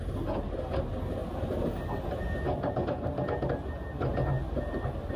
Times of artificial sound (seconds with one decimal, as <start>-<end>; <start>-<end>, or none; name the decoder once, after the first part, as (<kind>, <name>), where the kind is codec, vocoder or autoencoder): none